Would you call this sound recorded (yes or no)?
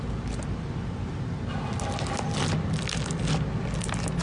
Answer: yes